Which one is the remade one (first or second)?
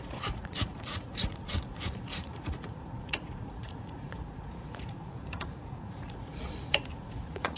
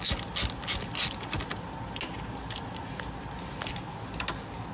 first